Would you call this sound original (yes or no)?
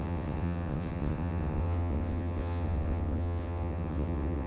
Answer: no